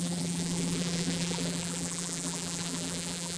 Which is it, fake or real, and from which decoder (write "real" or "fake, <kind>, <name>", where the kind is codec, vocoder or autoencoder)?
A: fake, vocoder, BigVGAN v2